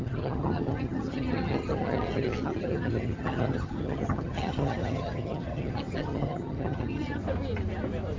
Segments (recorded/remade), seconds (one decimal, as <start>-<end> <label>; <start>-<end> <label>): 0.0-7.2 remade; 7.2-8.2 recorded